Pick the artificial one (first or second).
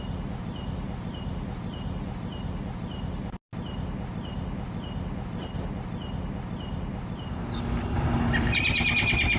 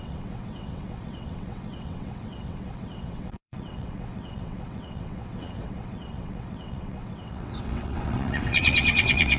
second